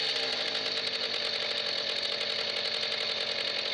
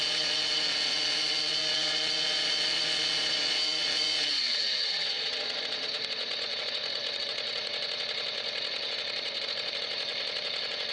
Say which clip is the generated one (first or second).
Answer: second